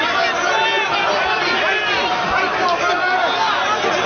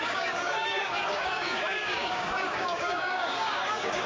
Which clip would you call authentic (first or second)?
first